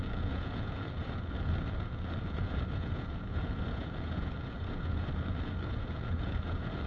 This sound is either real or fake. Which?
fake